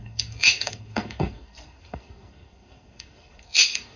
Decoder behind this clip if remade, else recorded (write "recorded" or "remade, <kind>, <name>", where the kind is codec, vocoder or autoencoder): remade, codec, SNAC